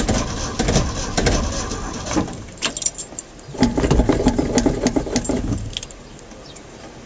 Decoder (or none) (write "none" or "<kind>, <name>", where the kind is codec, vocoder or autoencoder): none